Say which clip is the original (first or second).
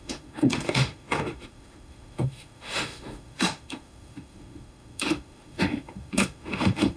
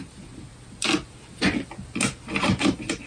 second